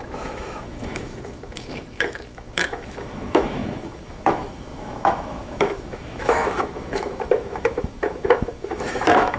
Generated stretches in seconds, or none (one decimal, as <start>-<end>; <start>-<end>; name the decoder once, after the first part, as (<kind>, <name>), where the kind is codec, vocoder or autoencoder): 0.0-9.4 (autoencoder, DAC-VAE)